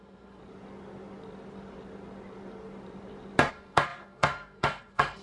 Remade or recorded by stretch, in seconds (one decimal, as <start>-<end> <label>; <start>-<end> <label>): 0.0-0.4 remade; 0.4-3.5 recorded; 3.5-5.2 remade